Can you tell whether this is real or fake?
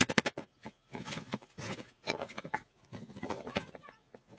fake